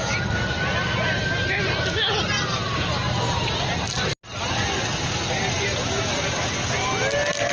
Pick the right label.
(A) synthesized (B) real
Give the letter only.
B